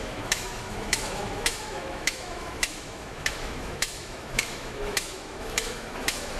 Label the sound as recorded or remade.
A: remade